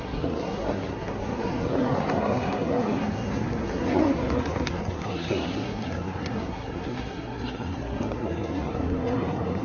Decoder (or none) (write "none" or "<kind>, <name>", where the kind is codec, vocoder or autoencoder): codec, SNAC